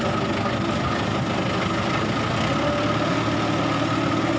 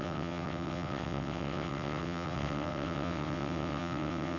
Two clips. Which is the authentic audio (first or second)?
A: first